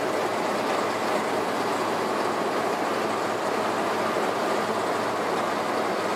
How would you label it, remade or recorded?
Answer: recorded